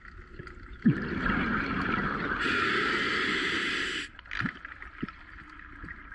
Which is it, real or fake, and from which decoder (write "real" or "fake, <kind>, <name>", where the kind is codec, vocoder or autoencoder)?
real